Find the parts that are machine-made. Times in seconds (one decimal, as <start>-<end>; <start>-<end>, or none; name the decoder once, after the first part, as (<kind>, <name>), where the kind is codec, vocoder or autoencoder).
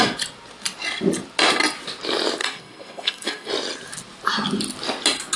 2.4-3.5 (codec, SNAC)